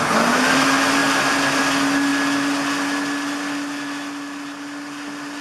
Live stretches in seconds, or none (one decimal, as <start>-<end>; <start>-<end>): 0.0-5.4

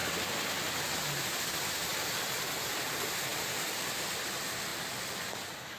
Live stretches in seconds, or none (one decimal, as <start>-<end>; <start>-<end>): 0.0-1.9; 2.5-3.3; 3.9-5.8

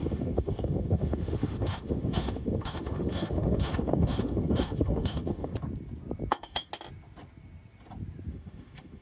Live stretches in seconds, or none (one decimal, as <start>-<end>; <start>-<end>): 5.5-6.3; 6.7-8.3

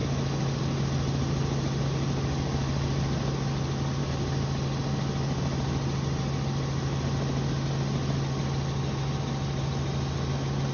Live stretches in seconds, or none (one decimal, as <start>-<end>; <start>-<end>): 0.0-10.7

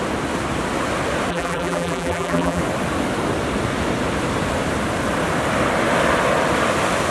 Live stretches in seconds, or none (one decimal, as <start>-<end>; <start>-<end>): 0.0-1.3; 2.6-7.1

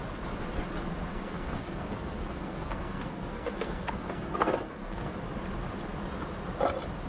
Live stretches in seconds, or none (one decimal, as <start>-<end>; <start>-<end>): 0.0-1.1; 5.1-7.1